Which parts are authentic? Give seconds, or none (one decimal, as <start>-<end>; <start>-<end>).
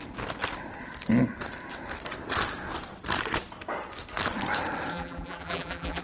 0.0-4.9